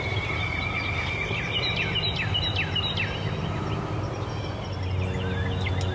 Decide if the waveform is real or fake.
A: real